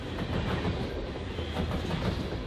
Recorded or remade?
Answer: recorded